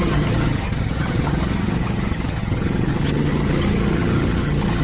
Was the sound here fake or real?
fake